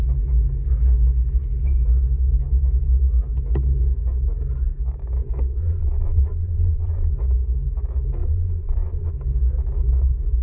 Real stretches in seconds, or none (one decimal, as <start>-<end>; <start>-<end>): 0.0-5.6; 7.1-8.2; 9.1-10.4